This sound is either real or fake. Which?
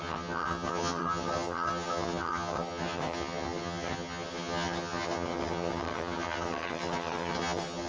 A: fake